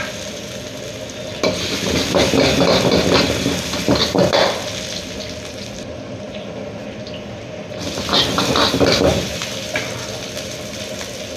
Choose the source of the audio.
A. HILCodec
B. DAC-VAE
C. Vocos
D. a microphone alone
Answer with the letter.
D